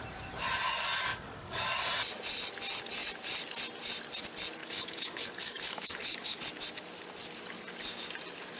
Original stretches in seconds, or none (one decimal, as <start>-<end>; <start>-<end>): 0.0-1.1; 1.8-4.6; 6.4-8.6